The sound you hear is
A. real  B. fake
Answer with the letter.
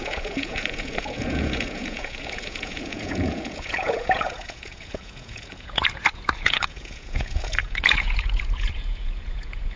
B